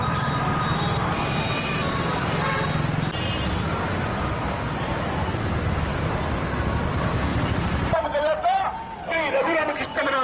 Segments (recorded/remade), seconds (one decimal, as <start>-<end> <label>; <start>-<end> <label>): 0.0-1.8 recorded; 1.8-5.2 remade; 5.2-7.3 recorded; 7.3-9.6 remade; 9.6-10.2 recorded